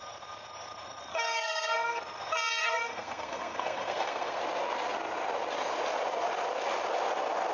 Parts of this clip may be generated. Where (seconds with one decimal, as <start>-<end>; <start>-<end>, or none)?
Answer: 1.1-2.0; 2.6-4.4